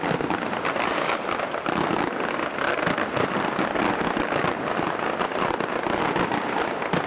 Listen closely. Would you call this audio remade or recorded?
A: recorded